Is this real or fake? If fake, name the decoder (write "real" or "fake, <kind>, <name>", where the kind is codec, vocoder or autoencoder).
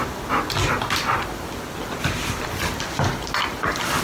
real